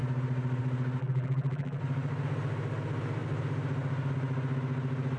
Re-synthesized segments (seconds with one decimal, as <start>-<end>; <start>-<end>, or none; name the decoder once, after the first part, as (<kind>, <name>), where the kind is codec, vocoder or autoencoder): 1.0-1.8 (vocoder, BigVGAN v2)